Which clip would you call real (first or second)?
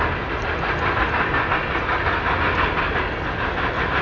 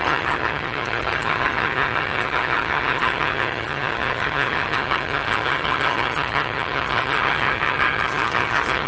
first